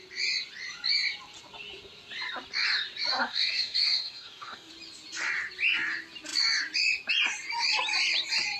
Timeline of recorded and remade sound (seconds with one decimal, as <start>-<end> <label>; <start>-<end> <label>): 0.0-3.1 recorded; 3.1-4.7 remade; 4.7-8.6 recorded